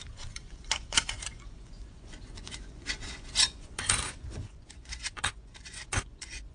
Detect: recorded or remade remade